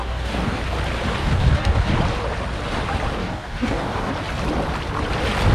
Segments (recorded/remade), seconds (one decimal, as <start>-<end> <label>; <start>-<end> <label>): 0.0-0.6 remade; 0.6-1.2 recorded; 1.2-1.9 remade; 1.9-3.2 recorded; 3.2-4.1 remade; 4.1-5.5 recorded